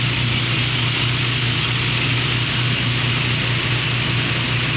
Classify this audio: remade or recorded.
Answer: recorded